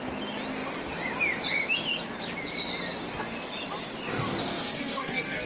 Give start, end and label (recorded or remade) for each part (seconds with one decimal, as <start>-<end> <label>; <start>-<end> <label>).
0.0-4.4 recorded; 4.4-5.5 remade